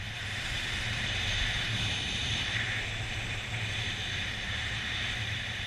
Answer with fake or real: fake